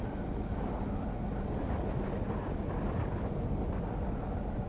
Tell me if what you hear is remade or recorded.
recorded